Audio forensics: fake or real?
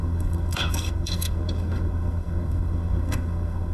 fake